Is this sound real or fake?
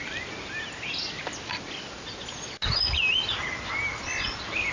real